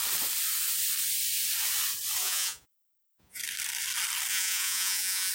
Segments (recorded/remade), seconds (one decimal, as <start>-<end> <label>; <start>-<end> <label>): 0.0-2.2 recorded; 2.2-3.4 remade; 3.4-4.3 recorded; 4.3-5.3 remade